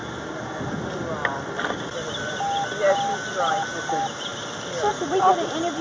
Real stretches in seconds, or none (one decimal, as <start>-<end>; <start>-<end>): 0.0-5.8